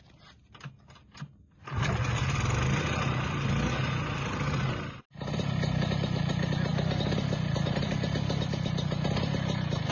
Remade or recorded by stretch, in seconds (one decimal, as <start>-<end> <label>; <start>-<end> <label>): 0.0-9.9 recorded